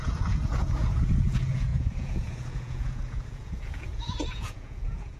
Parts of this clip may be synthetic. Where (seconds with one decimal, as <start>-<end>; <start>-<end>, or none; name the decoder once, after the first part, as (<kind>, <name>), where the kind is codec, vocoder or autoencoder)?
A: 0.0-5.2 (vocoder, Vocos)